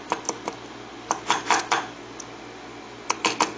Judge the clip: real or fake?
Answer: real